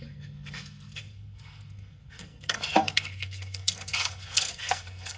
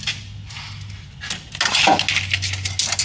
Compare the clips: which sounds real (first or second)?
second